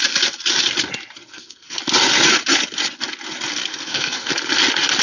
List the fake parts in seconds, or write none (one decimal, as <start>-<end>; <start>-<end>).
1.3-1.8; 3.7-4.3